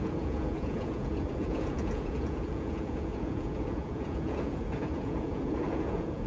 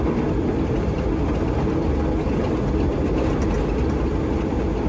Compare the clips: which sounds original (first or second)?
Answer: second